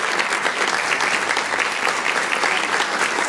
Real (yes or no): yes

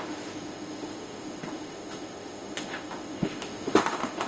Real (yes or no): no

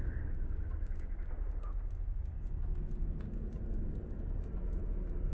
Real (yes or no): yes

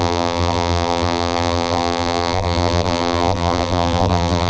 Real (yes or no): no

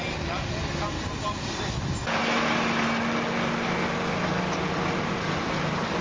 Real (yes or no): yes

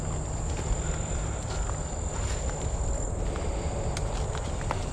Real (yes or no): yes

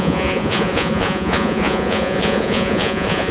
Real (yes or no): no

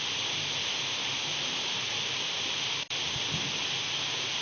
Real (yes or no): yes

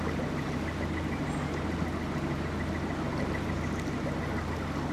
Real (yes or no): yes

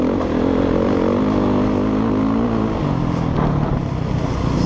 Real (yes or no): yes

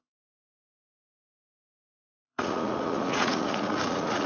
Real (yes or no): no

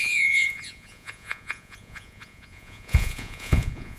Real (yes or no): no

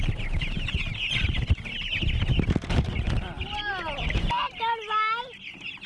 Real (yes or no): yes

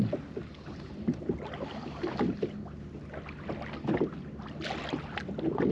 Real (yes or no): yes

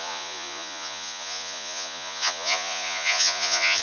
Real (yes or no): no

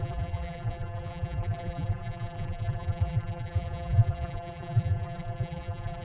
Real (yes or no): no